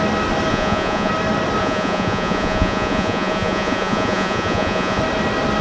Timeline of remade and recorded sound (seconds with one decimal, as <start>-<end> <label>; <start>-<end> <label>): 0.0-0.5 recorded; 0.5-1.1 remade; 1.1-1.6 recorded; 1.6-5.0 remade; 5.0-5.6 recorded